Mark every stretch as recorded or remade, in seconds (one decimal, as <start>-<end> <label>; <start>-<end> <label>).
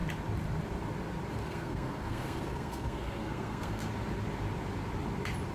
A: 0.0-1.4 recorded; 1.4-3.9 remade; 3.9-5.5 recorded